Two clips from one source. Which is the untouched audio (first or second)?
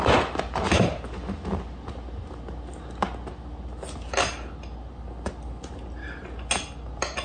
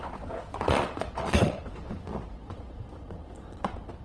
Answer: first